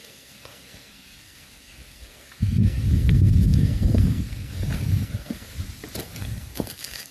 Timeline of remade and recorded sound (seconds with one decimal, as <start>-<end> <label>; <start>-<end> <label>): 0.0-5.5 remade; 5.5-6.0 recorded; 6.0-7.1 remade